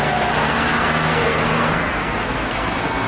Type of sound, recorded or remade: remade